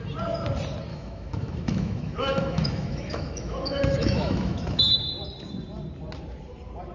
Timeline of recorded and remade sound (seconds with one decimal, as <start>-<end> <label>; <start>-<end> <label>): 0.0-0.9 recorded; 0.9-5.0 remade; 5.0-6.9 recorded